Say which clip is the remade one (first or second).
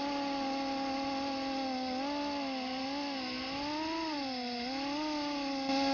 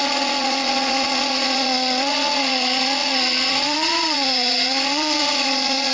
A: second